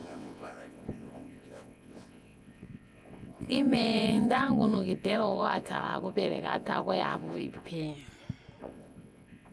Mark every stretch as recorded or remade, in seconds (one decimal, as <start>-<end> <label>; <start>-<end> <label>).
0.0-7.7 remade; 7.7-8.6 recorded; 8.6-9.5 remade